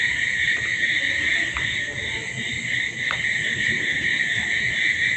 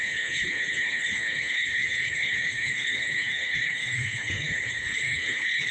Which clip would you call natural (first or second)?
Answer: first